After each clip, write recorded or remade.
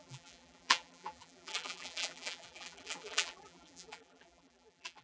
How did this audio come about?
remade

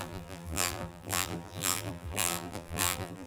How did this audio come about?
remade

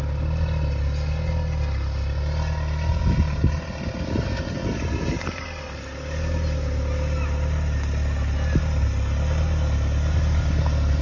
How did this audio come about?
recorded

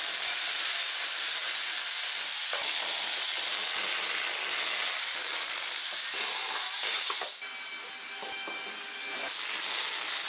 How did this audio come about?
recorded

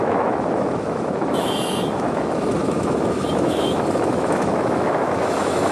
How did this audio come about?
remade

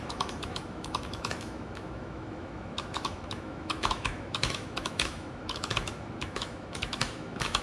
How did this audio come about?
remade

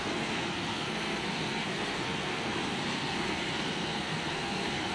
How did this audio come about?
remade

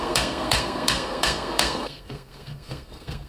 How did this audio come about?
remade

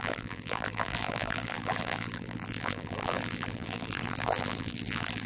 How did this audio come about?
remade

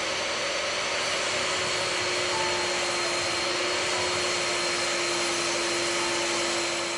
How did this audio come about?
recorded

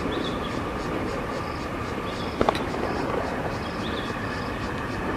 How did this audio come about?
recorded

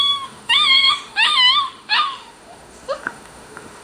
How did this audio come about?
remade